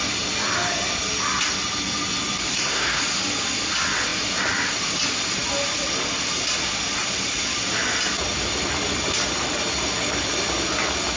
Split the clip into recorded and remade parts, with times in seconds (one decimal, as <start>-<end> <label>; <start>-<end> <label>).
0.0-2.5 recorded; 2.5-3.0 remade; 3.0-11.2 recorded